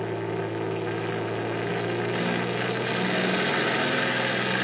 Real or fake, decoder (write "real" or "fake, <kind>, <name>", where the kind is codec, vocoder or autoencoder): real